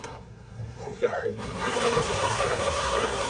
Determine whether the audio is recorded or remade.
remade